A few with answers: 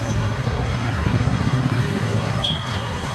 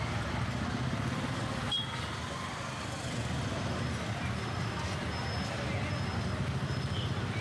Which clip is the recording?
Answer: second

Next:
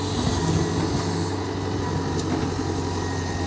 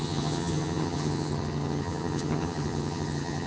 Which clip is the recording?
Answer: first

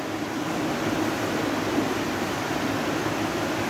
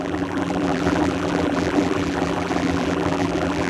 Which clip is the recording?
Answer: first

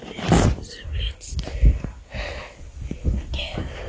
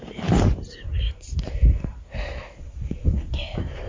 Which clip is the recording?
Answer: first